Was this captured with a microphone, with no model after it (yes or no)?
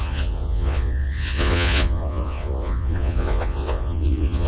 no